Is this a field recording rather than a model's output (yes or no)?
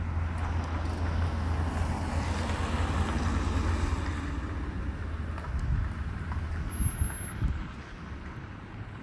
yes